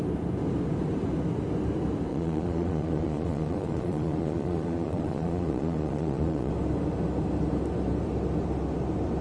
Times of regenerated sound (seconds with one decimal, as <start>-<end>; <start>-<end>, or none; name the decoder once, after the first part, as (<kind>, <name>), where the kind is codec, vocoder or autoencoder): 2.1-6.5 (vocoder, Vocos)